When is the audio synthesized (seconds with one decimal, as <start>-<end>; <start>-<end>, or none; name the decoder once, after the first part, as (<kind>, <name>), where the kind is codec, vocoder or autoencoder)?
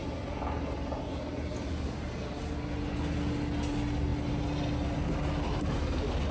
none